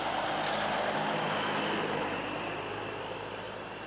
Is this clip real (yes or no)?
yes